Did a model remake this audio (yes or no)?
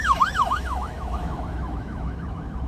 yes